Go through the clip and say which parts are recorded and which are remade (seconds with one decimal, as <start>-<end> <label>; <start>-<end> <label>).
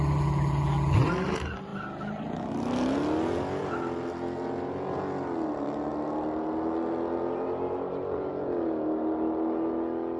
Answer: 0.0-10.2 recorded